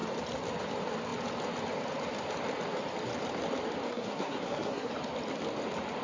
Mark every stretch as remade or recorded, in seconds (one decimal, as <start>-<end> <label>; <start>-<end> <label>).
0.0-3.9 recorded; 3.9-4.9 remade; 4.9-6.0 recorded